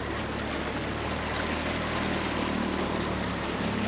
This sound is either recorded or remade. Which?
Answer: recorded